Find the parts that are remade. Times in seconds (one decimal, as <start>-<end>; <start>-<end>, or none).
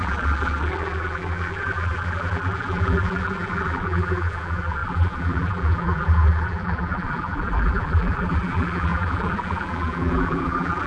0.0-10.9